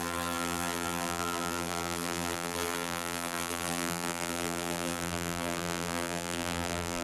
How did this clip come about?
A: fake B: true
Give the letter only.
A